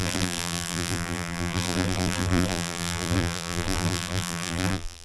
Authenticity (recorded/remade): remade